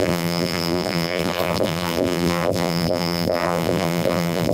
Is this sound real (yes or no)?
no